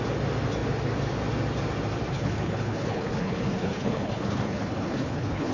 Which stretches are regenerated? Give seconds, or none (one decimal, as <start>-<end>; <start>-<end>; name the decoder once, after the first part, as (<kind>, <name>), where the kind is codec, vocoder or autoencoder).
2.1-5.5 (codec, HILCodec)